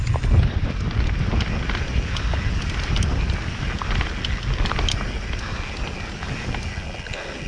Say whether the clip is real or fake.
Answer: real